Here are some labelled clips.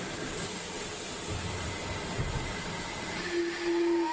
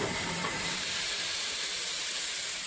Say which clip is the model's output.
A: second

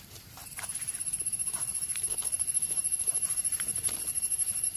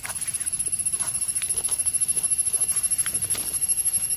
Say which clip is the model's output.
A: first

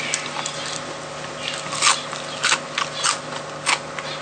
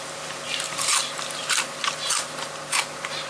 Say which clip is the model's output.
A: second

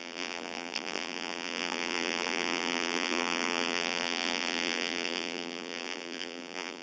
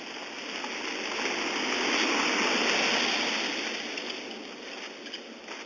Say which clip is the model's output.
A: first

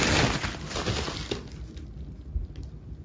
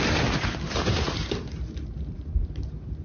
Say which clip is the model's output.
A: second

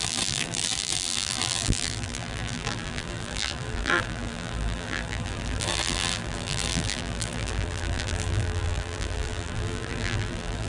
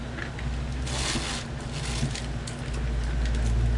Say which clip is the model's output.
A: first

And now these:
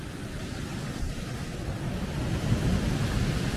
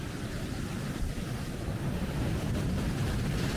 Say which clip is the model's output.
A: second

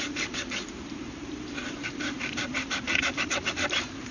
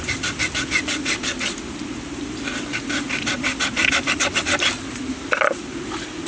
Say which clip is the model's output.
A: first